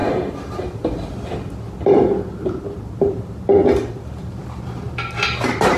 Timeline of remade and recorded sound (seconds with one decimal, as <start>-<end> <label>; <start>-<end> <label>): 0.0-5.8 recorded

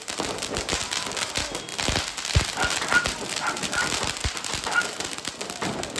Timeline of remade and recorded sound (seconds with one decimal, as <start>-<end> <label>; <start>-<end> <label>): 0.0-6.0 recorded

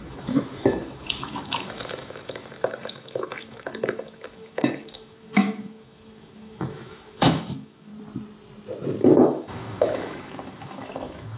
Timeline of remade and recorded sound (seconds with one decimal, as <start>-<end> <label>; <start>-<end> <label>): 0.0-7.9 remade; 7.9-9.0 recorded; 9.0-11.4 remade

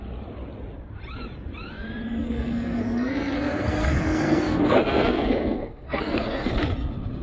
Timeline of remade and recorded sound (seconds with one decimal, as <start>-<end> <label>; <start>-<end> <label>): 0.0-2.2 recorded; 2.2-6.5 remade; 6.5-7.2 recorded

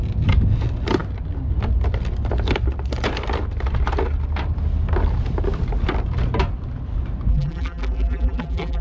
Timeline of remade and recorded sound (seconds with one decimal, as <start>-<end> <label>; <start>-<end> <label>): 0.0-7.3 recorded; 7.3-8.8 remade